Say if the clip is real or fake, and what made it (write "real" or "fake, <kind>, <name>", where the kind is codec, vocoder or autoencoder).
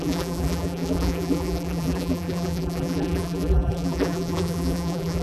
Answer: fake, vocoder, BigVGAN v2